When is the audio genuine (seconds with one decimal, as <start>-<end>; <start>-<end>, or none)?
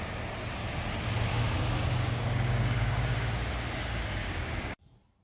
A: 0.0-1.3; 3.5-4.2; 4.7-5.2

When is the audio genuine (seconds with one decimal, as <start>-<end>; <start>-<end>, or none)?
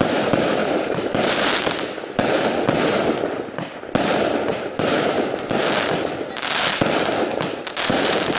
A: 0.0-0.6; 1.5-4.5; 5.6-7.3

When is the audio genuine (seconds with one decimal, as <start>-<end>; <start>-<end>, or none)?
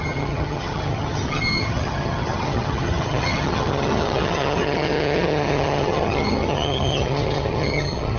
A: none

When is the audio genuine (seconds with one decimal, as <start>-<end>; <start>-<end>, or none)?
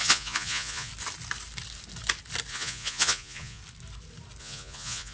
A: 0.9-2.5; 3.6-4.4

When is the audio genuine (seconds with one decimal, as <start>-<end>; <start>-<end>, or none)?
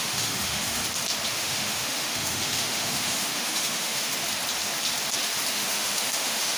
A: 0.8-1.3; 4.1-5.5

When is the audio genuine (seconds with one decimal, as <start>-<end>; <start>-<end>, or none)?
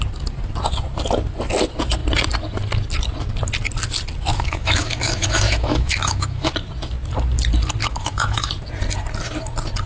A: 0.0-4.3; 6.5-7.8; 8.5-9.9